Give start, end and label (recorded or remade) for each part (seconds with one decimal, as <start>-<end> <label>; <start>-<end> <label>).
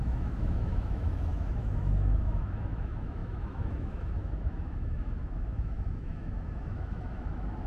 0.0-7.7 remade